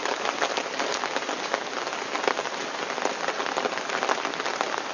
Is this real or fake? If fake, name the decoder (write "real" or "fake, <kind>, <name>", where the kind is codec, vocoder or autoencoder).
real